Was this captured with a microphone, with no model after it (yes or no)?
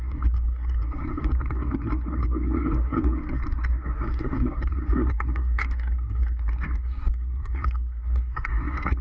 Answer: no